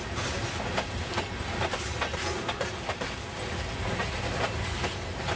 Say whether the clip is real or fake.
real